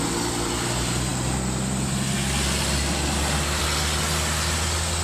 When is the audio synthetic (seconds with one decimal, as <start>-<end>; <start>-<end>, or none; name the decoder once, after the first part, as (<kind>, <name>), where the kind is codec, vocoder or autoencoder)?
none